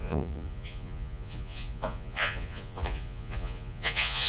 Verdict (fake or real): fake